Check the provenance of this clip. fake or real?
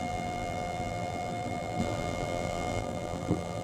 fake